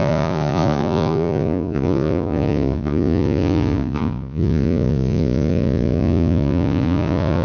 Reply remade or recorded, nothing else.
remade